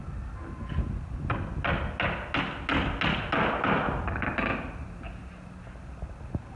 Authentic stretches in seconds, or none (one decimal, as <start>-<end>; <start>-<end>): 0.0-6.6